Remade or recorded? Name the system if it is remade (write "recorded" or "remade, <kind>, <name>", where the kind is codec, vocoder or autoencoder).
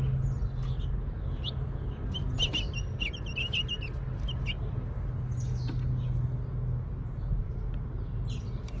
recorded